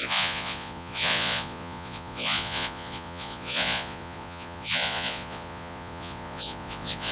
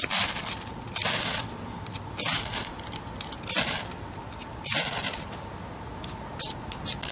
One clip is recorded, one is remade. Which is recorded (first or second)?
second